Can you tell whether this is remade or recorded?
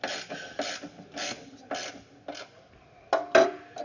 recorded